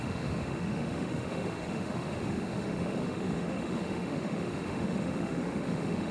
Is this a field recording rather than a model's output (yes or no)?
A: no